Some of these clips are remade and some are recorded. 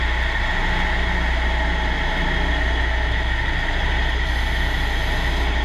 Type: recorded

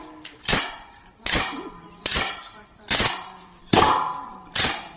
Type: remade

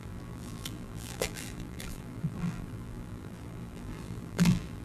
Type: remade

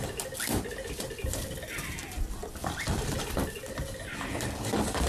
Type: recorded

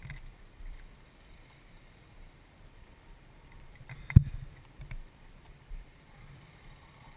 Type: remade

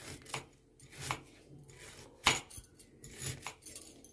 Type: recorded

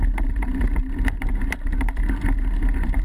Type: remade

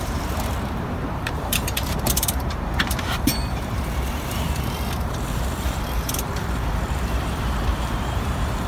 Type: remade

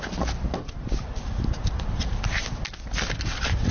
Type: recorded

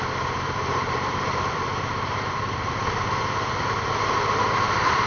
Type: remade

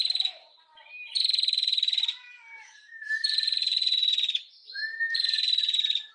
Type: remade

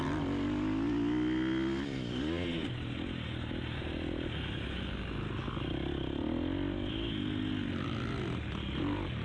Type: recorded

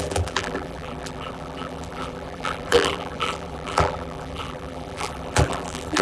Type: remade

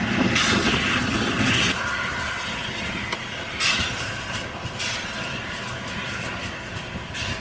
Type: remade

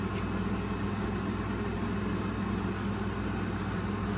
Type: recorded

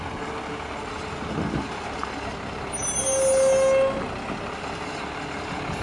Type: recorded